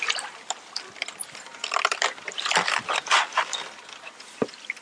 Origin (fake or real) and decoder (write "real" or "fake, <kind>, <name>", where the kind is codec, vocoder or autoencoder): fake, vocoder, BigVGAN v2